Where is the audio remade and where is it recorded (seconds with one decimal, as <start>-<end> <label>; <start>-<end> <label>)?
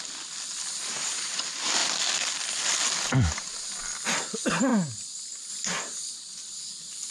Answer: 0.0-1.8 recorded; 1.8-3.4 remade; 3.4-7.1 recorded